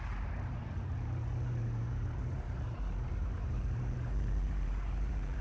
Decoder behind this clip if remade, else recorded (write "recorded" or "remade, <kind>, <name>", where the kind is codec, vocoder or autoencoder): remade, vocoder, BigVGAN v2